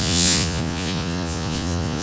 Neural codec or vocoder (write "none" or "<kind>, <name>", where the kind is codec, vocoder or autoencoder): vocoder, Vocos